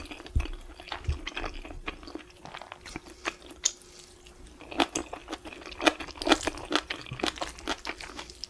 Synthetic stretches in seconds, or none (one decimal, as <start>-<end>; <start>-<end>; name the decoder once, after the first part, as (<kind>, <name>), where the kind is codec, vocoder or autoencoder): none